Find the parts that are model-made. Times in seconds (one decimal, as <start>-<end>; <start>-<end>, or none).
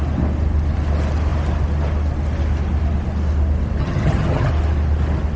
3.8-4.5